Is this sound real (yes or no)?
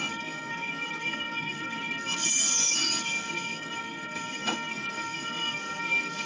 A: no